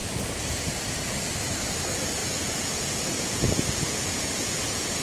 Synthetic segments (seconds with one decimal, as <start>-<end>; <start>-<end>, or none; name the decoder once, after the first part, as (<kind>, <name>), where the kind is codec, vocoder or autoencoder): 0.0-0.6 (vocoder, Vocos); 2.2-5.0